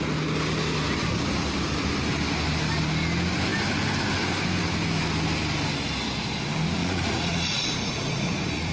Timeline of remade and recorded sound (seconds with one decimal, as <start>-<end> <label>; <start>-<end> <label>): 0.0-6.8 recorded; 6.8-8.7 remade